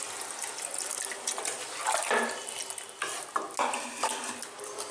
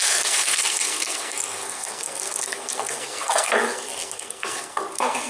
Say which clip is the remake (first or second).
second